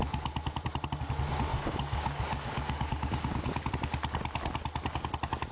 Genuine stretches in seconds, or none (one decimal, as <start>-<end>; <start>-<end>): 0.0-1.5; 3.7-5.5

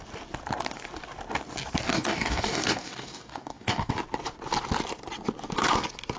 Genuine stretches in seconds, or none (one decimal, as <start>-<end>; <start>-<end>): 0.0-1.9; 3.9-6.2